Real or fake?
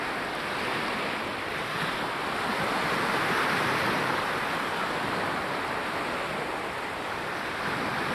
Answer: real